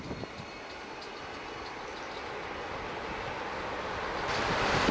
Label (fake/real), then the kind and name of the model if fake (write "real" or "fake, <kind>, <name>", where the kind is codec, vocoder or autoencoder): real